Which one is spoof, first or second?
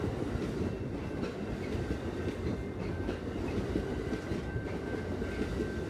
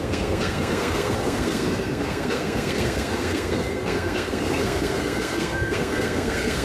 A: second